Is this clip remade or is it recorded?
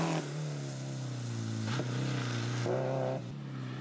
recorded